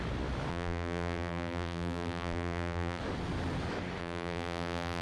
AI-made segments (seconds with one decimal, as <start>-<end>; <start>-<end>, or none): 0.5-3.0; 4.0-5.0